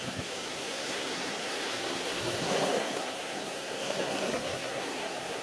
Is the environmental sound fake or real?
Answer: fake